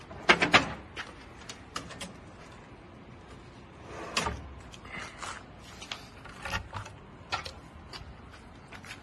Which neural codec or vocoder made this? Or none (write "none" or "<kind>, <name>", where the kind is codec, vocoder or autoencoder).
none